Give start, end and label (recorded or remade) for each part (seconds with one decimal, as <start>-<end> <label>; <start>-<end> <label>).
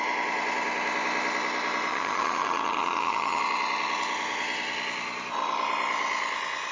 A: 0.0-1.9 recorded; 1.9-3.4 remade; 3.4-6.7 recorded